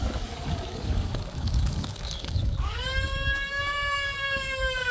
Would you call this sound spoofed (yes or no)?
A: yes